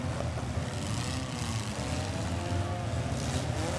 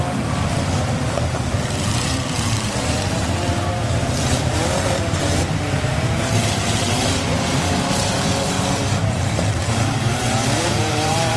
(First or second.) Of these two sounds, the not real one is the second